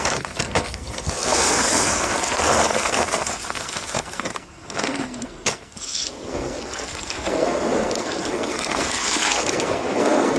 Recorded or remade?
remade